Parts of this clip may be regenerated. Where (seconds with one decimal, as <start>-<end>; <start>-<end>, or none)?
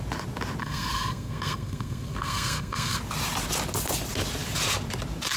0.6-3.0